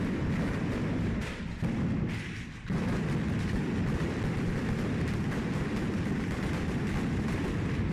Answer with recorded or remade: remade